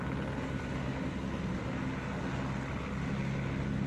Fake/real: real